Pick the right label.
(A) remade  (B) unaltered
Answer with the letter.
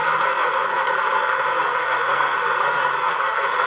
A